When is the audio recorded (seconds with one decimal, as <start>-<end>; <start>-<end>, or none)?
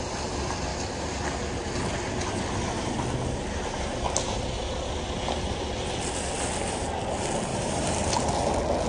0.0-7.5; 8.1-8.9